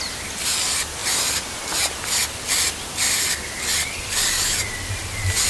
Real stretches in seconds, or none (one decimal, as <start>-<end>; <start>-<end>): 0.0-5.5